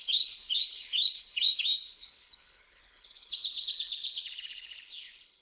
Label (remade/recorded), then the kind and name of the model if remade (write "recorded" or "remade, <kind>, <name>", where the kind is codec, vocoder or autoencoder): remade, codec, HILCodec